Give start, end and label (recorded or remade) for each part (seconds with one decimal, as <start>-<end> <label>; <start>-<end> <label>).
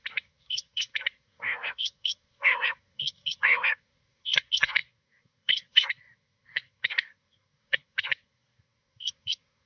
0.0-9.7 remade